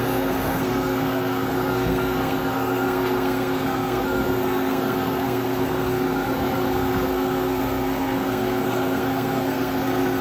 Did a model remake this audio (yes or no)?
yes